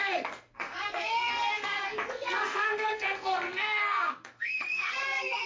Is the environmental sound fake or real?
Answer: fake